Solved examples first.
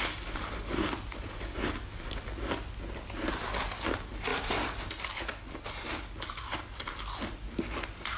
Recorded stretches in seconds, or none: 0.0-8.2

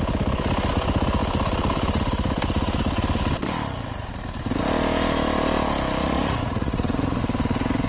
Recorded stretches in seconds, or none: 0.0-6.0; 7.2-7.9

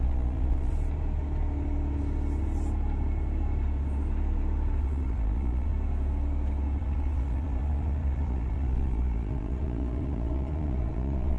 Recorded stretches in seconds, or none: 0.7-4.8; 5.7-6.8

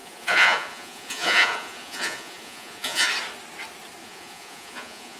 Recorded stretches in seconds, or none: 3.1-4.0

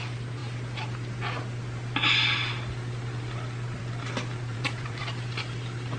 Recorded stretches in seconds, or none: 0.0-4.5; 5.0-6.0

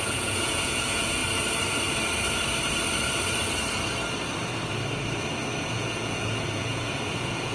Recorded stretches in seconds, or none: 1.2-5.7

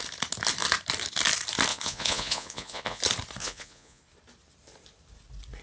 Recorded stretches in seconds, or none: 0.0-1.7; 3.0-3.4; 4.0-5.6

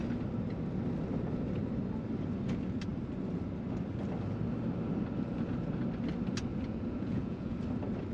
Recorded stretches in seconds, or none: 0.0-6.5; 7.6-8.1